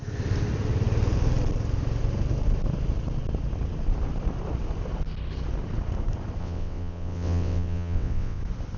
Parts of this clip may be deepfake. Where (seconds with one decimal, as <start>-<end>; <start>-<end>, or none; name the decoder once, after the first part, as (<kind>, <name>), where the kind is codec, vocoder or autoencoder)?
6.4-8.4 (vocoder, WaveNeXt)